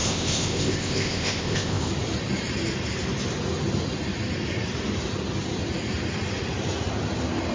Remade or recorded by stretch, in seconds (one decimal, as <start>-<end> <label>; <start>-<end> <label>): 0.0-1.9 remade; 1.9-7.5 recorded

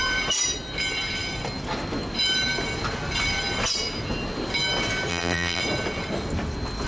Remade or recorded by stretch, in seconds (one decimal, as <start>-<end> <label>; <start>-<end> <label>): 0.0-5.1 recorded; 5.1-5.6 remade; 5.6-6.9 recorded

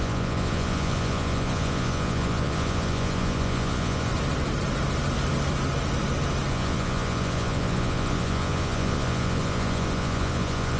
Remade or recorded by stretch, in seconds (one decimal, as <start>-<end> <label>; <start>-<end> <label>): 0.0-4.1 remade; 4.1-6.5 recorded; 6.5-10.8 remade

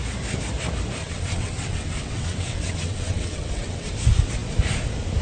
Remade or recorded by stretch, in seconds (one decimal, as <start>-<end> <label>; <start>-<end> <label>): 0.0-1.0 recorded; 1.0-3.9 remade; 3.9-5.2 recorded

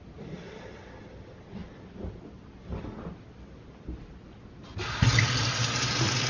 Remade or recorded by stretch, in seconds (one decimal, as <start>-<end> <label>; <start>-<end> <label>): 0.0-6.3 recorded

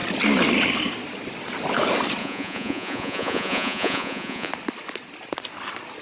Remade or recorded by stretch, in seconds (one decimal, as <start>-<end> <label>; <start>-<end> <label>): 0.0-2.2 recorded; 2.2-4.5 remade; 4.5-6.0 recorded

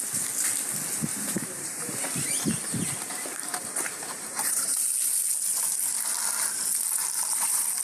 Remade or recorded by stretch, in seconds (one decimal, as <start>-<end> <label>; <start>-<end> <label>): 0.0-1.1 recorded; 1.1-4.9 remade; 4.9-7.0 recorded; 7.0-7.8 remade

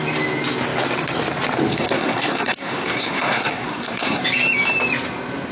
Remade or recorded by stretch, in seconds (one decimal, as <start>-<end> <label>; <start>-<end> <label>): 0.0-1.7 recorded; 1.7-4.2 remade; 4.2-5.5 recorded